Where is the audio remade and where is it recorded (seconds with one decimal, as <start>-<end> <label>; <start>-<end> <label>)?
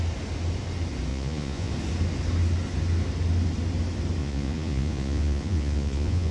0.0-1.1 recorded; 1.1-1.7 remade; 1.7-4.2 recorded; 4.2-6.3 remade